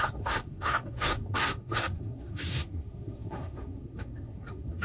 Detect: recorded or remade remade